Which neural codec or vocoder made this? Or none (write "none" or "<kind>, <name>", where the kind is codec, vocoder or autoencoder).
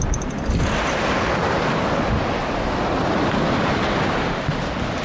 none